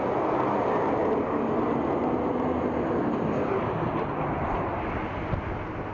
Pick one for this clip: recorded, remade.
recorded